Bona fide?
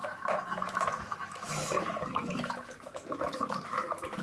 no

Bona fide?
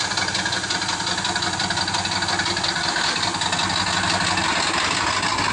yes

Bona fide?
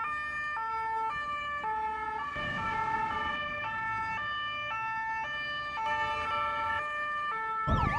yes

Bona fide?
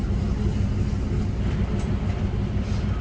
yes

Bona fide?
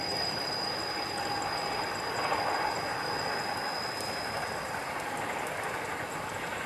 yes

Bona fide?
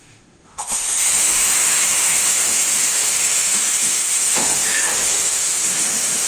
no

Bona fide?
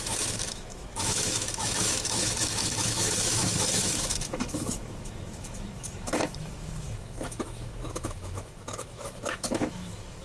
no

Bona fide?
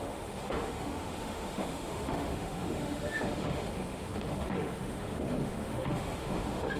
no